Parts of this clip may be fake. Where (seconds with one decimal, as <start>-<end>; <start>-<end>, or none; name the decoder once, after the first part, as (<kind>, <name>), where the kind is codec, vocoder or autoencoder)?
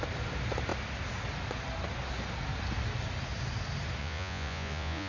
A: 4.0-5.1 (vocoder, Vocos)